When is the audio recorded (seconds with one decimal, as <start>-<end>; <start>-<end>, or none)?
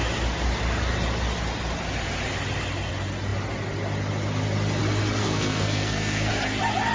0.0-5.2; 6.3-6.9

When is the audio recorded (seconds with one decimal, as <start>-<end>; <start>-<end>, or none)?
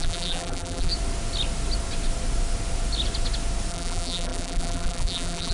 0.9-3.7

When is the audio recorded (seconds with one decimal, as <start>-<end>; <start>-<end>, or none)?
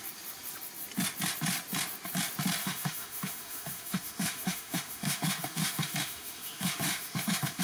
0.0-2.6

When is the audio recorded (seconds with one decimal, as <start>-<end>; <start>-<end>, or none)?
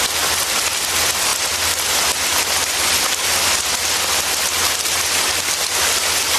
0.0-6.4